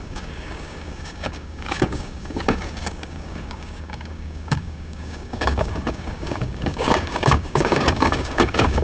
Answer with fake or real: fake